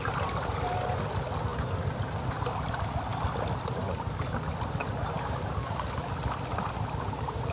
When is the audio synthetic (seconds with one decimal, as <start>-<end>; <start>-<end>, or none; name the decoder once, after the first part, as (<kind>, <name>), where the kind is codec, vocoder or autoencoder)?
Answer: none